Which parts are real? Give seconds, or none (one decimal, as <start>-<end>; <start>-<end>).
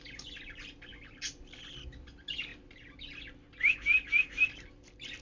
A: 0.0-5.2